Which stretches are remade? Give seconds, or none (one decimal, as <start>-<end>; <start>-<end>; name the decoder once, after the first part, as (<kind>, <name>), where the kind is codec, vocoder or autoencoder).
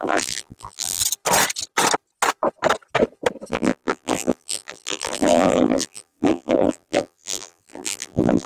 0.0-1.0 (vocoder, BigVGAN v2); 3.5-8.5